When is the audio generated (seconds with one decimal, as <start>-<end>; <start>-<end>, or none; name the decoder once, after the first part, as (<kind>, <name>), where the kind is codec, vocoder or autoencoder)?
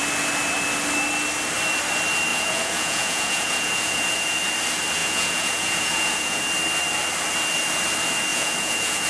2.3-4.4 (vocoder, Vocos); 5.0-6.4; 8.3-9.1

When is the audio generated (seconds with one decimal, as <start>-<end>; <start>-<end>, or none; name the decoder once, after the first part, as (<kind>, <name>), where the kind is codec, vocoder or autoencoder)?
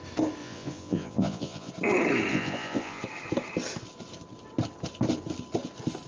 0.4-1.7 (vocoder, Vocos); 2.3-3.0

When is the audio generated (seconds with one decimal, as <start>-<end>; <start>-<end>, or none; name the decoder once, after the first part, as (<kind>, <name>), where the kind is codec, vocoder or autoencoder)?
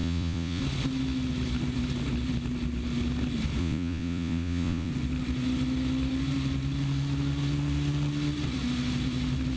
0.0-0.6 (vocoder, Vocos); 3.6-4.9